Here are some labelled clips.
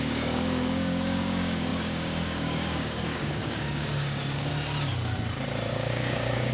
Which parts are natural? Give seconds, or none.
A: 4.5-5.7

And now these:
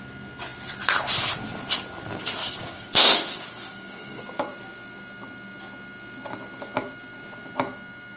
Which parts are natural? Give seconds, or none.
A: 0.0-2.4; 4.2-8.2

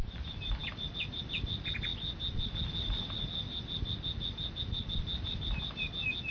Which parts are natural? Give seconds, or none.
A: 0.0-6.3

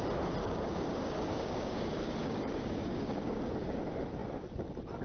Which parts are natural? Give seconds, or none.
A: 0.0-0.4; 3.4-5.0

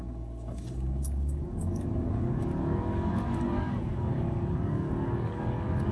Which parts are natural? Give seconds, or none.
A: none

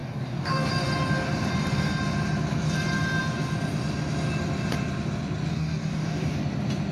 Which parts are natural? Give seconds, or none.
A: 0.7-5.5; 6.3-6.9